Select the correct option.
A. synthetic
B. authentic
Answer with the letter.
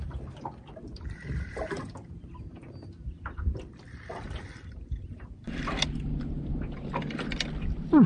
B